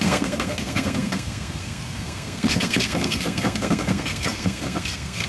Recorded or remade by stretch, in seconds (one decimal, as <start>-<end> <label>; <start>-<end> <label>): 0.0-5.3 remade